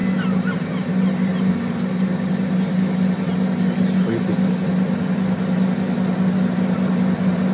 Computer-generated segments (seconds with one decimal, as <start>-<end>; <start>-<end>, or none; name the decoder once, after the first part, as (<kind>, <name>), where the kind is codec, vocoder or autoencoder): none

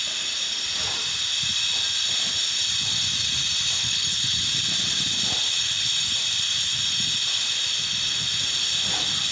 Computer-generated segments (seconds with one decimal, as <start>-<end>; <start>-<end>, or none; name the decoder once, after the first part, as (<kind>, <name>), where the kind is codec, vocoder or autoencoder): 3.8-4.4 (codec, HILCodec)

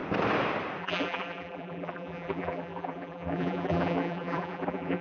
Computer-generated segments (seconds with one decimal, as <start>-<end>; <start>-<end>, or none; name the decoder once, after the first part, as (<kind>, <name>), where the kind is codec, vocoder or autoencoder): 0.8-5.0 (vocoder, BigVGAN v2)

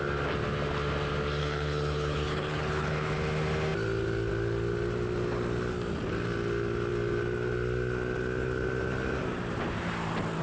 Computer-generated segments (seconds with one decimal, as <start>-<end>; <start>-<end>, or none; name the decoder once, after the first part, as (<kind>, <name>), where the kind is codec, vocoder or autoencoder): 1.4-3.2 (codec, HILCodec)

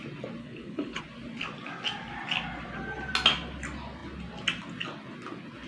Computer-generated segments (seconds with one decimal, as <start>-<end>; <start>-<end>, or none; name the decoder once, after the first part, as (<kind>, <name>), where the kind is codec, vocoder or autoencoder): 0.4-1.0 (codec, HILCodec)

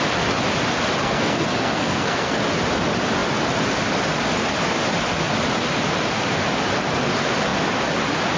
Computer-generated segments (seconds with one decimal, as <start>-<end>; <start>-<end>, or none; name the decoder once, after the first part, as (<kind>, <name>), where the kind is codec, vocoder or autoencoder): 1.0-2.4 (codec, SNAC)